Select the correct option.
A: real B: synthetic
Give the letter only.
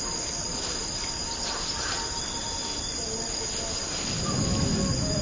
A